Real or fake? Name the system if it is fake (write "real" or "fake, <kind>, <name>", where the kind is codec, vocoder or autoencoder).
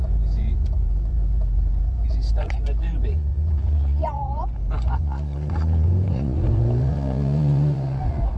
fake, vocoder, Vocos